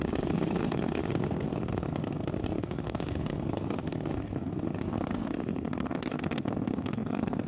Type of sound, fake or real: fake